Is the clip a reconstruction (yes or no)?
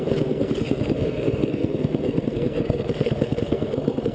yes